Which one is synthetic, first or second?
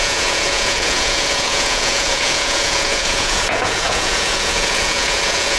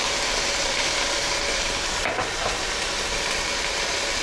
first